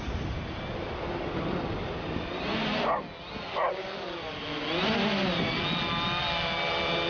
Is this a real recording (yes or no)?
yes